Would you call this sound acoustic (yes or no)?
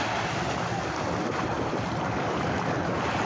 yes